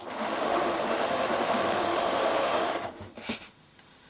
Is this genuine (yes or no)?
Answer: no